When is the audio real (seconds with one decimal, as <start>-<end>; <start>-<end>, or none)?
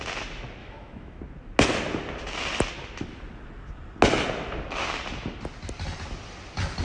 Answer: 0.0-0.6; 1.2-6.8